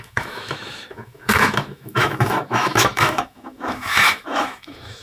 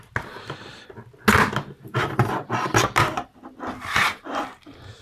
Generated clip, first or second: first